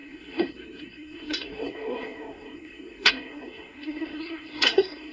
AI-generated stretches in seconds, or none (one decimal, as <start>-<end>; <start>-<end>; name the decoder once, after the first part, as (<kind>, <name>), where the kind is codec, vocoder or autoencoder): 0.0-5.1 (codec, SNAC)